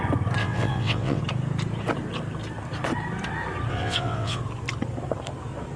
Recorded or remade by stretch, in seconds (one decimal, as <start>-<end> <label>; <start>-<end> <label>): 0.0-0.4 recorded; 0.4-1.2 remade; 1.2-3.7 recorded; 3.7-4.4 remade; 4.4-5.8 recorded